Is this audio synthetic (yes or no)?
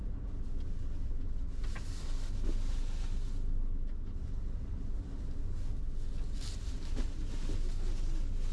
no